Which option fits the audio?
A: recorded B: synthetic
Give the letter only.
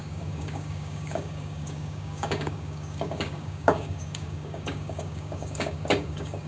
B